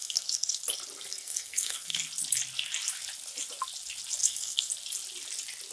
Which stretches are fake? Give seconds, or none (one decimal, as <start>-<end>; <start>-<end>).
0.0-0.6; 1.1-2.1; 4.2-4.7

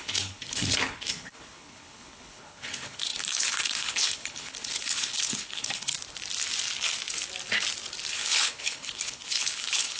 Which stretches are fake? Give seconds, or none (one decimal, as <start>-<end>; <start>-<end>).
0.0-5.9; 8.1-10.0

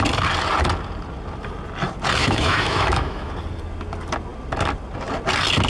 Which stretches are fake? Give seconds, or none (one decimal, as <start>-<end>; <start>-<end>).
2.2-3.3

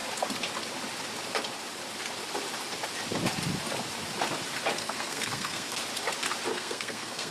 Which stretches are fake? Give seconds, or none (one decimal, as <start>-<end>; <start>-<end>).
4.7-5.8; 6.5-7.3

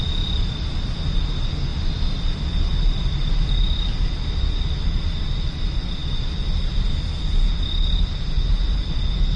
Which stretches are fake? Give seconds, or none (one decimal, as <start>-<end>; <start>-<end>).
none

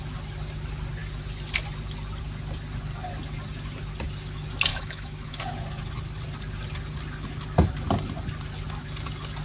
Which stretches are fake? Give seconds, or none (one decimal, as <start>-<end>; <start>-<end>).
4.7-5.4

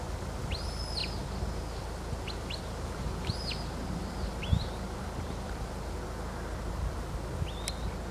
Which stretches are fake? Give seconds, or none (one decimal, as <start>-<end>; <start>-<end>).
none

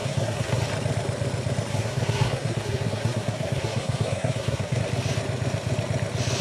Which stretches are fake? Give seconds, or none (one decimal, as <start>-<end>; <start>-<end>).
0.0-0.6; 1.7-4.8